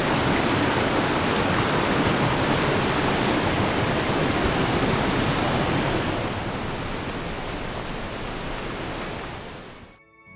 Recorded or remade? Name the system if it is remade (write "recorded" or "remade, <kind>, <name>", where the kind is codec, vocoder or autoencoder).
recorded